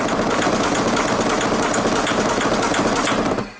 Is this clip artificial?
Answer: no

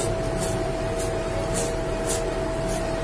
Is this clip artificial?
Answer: no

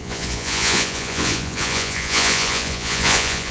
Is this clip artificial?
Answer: yes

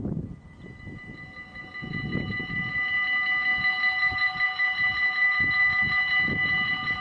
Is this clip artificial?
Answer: no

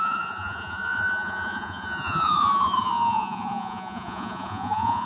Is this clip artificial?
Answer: yes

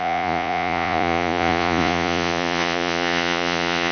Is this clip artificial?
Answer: yes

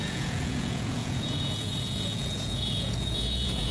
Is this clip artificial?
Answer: yes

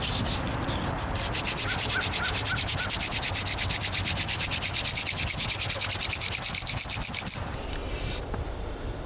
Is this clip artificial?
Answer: no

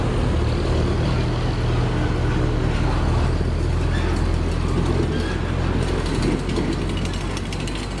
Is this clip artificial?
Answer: no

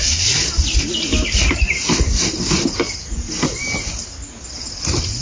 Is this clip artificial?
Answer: no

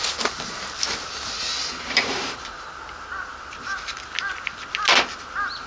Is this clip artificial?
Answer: no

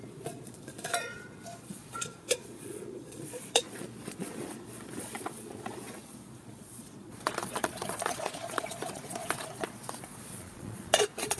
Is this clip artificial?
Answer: yes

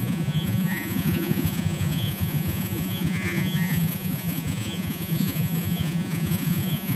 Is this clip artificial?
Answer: yes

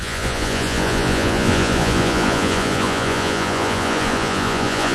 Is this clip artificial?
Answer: yes